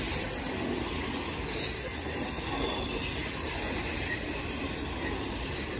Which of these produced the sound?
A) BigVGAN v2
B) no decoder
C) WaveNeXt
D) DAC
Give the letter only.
B